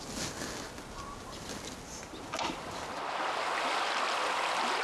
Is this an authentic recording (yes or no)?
yes